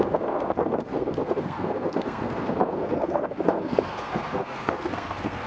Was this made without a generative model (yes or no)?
no